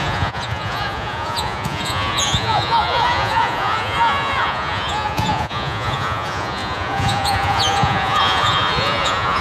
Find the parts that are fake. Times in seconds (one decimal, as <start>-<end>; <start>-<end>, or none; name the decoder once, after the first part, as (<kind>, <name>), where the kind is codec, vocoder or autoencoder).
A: 0.0-9.4 (vocoder, Vocos)